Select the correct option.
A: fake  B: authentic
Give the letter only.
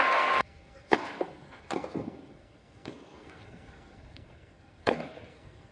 A